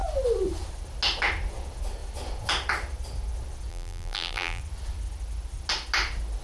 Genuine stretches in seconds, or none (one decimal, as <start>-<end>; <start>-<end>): 0.0-3.7; 4.6-6.4